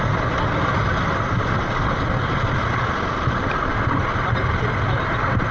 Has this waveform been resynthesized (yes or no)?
no